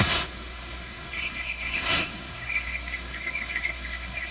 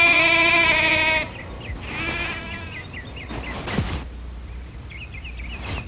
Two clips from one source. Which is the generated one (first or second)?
first